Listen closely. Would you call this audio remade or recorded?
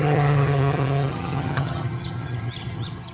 remade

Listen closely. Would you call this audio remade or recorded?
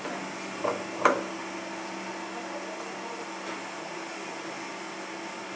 recorded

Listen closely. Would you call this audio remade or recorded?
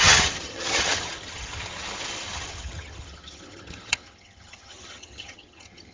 remade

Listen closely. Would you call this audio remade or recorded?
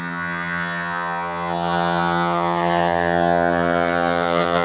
remade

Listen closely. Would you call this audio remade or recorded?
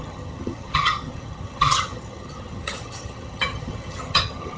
remade